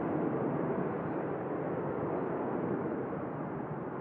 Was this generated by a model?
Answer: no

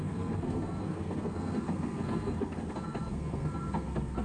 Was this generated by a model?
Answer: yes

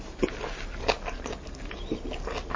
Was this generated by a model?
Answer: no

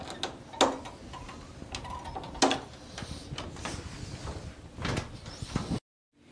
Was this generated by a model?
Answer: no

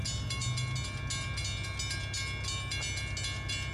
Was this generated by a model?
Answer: no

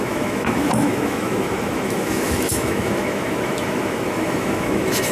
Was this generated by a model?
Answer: yes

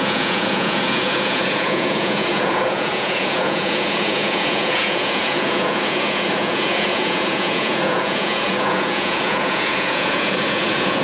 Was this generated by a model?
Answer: yes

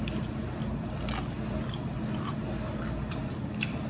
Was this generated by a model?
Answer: no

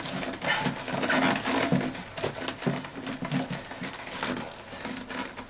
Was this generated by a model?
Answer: no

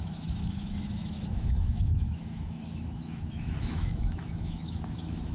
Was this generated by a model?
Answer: yes